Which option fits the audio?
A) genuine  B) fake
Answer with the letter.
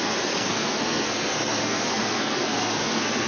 B